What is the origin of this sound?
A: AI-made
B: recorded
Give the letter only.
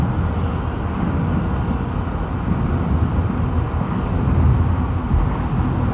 B